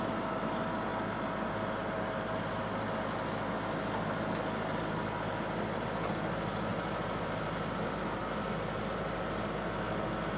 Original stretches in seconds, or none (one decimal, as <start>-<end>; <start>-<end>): 0.0-10.4